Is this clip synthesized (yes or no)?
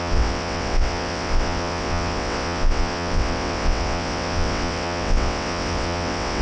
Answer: yes